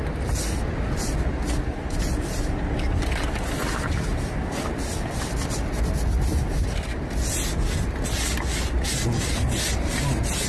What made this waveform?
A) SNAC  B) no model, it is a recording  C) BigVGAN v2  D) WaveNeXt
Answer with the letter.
B